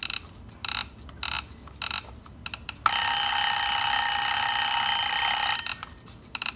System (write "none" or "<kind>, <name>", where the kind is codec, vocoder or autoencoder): none